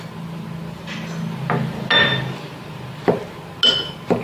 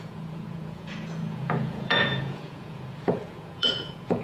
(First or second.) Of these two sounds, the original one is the first